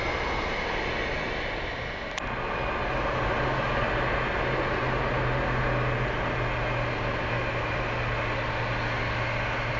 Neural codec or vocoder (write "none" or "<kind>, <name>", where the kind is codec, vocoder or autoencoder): none